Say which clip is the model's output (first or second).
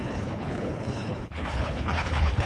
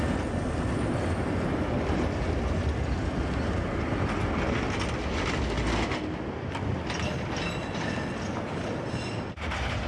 first